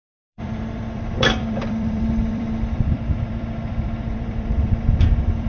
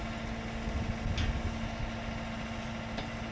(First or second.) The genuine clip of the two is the second